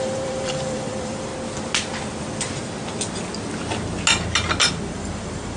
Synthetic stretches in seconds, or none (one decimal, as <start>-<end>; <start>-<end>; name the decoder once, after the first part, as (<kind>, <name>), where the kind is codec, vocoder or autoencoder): 0.0-1.3 (vocoder, BigVGAN v2); 4.7-5.6